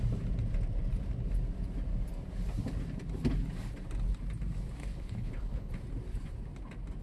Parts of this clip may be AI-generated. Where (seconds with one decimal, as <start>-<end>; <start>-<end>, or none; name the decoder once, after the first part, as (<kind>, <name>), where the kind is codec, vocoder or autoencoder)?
4.8-5.7 (codec, HILCodec)